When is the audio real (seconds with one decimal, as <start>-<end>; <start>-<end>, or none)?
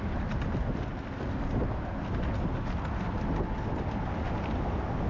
0.0-5.1